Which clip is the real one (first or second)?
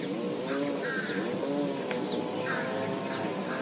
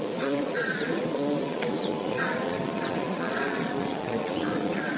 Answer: first